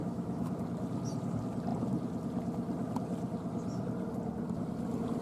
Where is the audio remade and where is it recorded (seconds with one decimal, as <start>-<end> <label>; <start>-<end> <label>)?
0.0-0.6 remade; 0.6-5.2 recorded